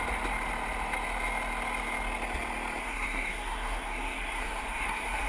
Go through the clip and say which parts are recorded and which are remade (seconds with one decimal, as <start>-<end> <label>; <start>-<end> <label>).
0.0-2.8 recorded; 2.8-5.3 remade